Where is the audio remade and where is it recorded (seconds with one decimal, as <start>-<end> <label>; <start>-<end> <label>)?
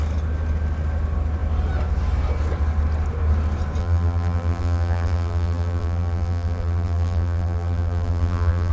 0.0-3.8 recorded; 3.8-8.7 remade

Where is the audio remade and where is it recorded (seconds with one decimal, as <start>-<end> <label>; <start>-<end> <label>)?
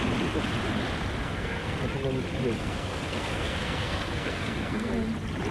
0.0-1.2 recorded; 1.2-1.8 remade; 1.8-2.6 recorded; 2.6-4.9 remade; 4.9-5.5 recorded